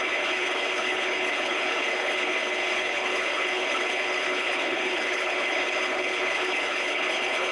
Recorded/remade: remade